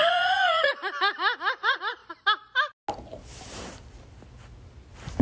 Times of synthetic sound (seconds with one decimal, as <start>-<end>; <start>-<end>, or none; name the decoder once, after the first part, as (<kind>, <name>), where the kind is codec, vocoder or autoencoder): 0.0-0.8 (vocoder, Vocos); 1.6-2.0

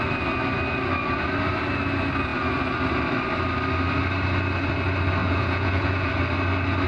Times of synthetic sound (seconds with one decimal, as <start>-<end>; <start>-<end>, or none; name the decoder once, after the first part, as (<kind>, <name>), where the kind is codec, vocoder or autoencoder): 5.2-6.1 (vocoder, Vocos)

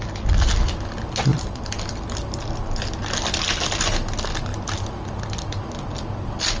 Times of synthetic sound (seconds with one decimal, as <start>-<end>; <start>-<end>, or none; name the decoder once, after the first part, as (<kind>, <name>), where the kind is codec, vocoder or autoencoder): none

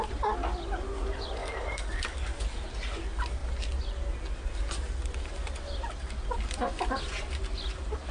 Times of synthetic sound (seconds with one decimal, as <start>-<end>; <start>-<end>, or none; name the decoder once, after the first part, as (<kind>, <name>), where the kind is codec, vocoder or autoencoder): 1.4-2.3 (codec, DAC)

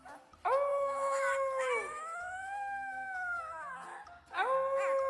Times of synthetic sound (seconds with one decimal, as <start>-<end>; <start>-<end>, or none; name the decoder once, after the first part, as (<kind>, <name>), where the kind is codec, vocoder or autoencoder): 0.7-3.7 (autoencoder, DAC-VAE)

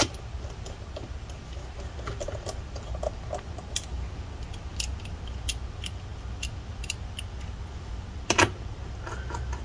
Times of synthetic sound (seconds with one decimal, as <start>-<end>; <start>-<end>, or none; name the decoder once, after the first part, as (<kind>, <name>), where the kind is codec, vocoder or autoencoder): none

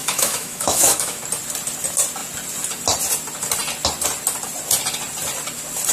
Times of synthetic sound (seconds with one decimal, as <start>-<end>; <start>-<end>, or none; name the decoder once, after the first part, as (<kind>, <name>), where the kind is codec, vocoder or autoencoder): 0.0-1.2 (autoencoder, DAC-VAE)

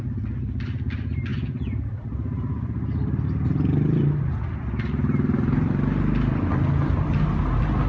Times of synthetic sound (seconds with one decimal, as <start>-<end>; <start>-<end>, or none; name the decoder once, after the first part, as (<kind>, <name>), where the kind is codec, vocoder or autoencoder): 1.3-1.9 (vocoder, Vocos)